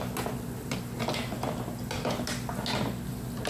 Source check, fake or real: real